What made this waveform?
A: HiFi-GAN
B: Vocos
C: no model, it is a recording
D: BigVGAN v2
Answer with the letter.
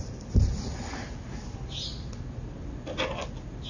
C